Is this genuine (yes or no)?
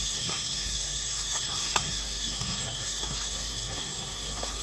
no